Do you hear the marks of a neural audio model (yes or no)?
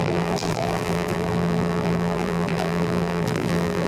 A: yes